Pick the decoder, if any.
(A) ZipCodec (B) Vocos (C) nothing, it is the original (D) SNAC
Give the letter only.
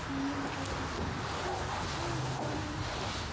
C